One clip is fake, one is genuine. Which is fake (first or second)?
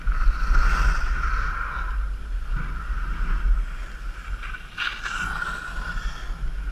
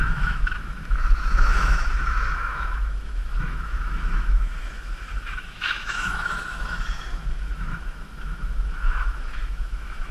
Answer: second